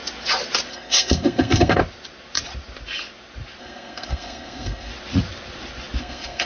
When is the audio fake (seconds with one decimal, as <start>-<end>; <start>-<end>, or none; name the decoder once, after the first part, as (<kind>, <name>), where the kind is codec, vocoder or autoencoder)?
0.7-1.8 (codec, SNAC); 3.6-4.9; 6.0-6.5